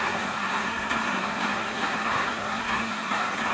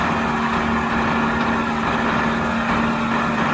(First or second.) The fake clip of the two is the first